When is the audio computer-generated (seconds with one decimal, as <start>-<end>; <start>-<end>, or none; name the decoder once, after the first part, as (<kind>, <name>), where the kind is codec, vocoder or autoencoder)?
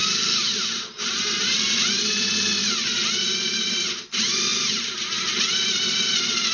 0.0-1.7 (vocoder, BigVGAN v2); 4.5-5.0